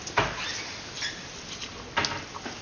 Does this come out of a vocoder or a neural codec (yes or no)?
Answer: no